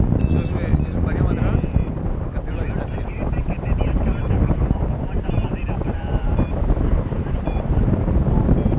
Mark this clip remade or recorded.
remade